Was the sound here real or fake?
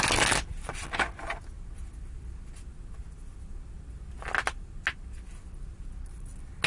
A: real